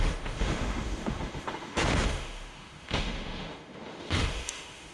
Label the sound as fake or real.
fake